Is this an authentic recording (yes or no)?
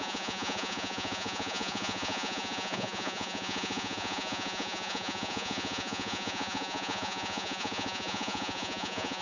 no